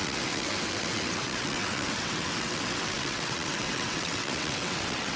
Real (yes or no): no